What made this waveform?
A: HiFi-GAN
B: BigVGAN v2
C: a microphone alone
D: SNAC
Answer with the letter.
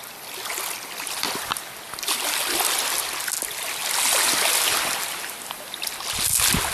C